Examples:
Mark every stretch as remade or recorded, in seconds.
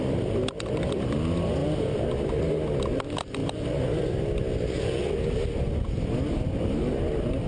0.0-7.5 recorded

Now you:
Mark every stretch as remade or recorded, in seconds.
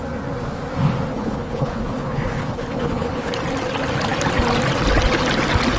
0.0-1.1 recorded; 1.1-3.3 remade; 3.3-5.8 recorded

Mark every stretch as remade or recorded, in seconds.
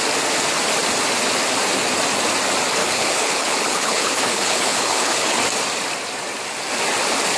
0.0-2.8 recorded; 2.8-5.4 remade; 5.4-7.4 recorded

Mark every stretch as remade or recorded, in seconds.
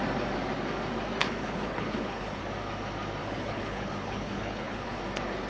0.0-1.2 recorded; 1.2-2.4 remade; 2.4-3.2 recorded; 3.2-5.0 remade; 5.0-5.5 recorded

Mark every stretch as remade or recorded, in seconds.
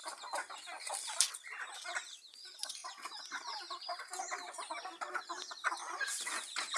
0.0-6.8 recorded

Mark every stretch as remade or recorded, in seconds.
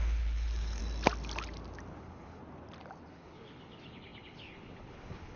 0.0-0.8 remade; 0.8-2.0 recorded; 2.0-2.4 remade; 2.4-3.1 recorded; 3.1-5.4 remade